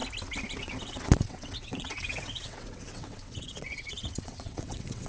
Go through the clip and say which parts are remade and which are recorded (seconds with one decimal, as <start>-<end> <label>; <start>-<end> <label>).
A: 0.0-0.6 recorded; 0.6-5.1 remade